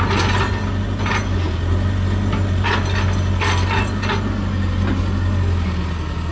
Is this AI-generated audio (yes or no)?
no